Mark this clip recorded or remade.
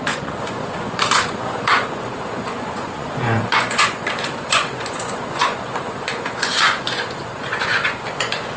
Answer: remade